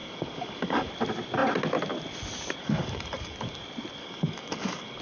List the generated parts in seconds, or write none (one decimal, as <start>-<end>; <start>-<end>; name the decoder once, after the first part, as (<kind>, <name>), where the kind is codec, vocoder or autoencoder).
0.0-0.9 (codec, DAC); 2.6-3.6; 4.0-5.0